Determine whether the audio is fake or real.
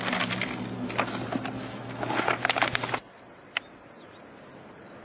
real